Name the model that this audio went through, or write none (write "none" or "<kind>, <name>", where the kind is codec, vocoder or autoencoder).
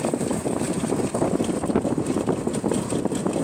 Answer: vocoder, BigVGAN v2